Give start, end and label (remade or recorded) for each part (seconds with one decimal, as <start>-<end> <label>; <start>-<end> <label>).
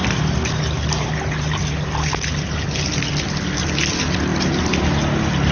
0.0-5.5 recorded